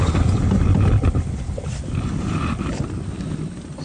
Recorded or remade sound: recorded